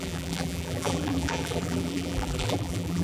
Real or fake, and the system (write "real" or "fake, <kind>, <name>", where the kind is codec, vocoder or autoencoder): fake, vocoder, BigVGAN v2